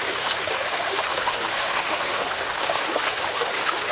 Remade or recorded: remade